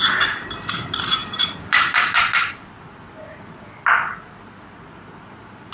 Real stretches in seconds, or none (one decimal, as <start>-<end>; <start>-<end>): 0.0-1.2; 2.6-5.7